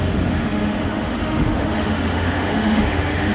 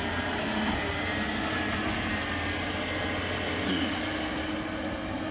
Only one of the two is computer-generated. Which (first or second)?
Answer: first